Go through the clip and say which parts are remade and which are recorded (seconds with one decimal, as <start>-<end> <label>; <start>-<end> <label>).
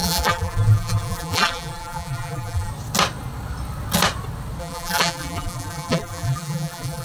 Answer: 0.0-2.7 remade; 2.7-4.6 recorded; 4.6-7.0 remade